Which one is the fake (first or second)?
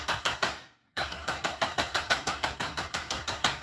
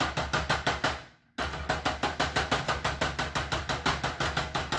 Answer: first